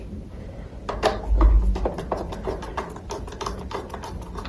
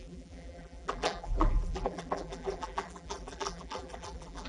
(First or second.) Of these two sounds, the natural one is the first